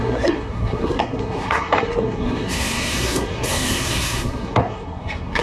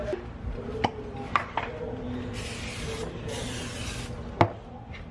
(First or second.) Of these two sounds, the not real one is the first